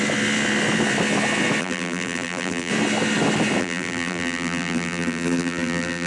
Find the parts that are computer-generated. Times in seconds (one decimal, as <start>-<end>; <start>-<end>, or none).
1.6-2.7; 3.6-6.1

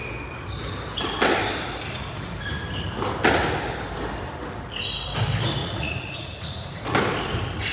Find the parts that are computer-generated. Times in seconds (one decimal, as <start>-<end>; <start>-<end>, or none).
5.6-6.8